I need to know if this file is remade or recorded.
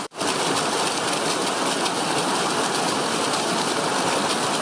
recorded